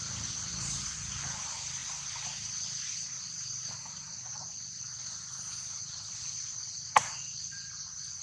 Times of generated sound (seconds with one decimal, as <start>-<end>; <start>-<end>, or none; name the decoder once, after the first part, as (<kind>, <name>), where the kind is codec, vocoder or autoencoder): 0.0-1.8 (vocoder, BigVGAN v2); 6.1-8.2